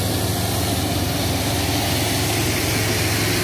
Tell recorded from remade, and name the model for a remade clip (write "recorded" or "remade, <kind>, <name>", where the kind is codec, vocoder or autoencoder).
recorded